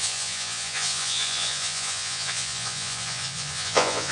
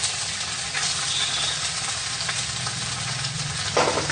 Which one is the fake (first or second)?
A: first